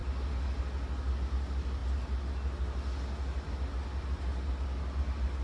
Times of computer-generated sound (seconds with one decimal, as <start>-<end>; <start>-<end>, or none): none